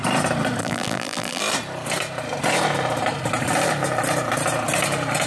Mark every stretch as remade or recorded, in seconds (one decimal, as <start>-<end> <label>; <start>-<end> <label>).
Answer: 0.0-0.6 recorded; 0.6-1.4 remade; 1.4-5.3 recorded